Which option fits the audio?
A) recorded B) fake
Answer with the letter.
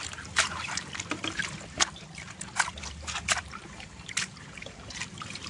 B